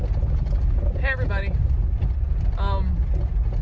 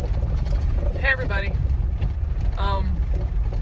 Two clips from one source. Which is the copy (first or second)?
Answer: second